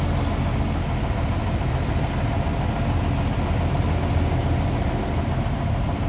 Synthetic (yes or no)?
no